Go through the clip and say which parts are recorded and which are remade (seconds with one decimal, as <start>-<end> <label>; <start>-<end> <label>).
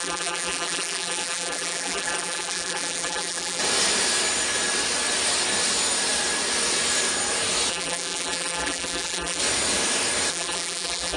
0.0-3.6 remade; 3.6-7.7 recorded; 7.7-9.4 remade; 9.4-10.3 recorded; 10.3-11.2 remade